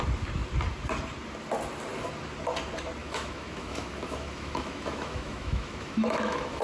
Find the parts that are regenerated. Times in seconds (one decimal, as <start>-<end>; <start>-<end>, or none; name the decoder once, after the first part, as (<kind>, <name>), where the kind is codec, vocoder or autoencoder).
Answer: 3.0-6.6 (autoencoder, DAC-VAE)